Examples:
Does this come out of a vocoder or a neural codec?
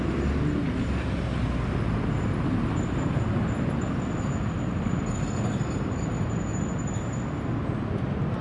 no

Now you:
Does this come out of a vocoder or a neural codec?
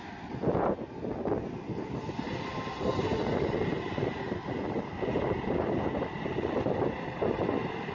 no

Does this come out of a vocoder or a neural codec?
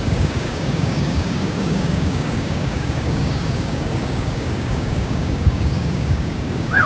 yes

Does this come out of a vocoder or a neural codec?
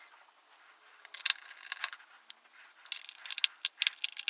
no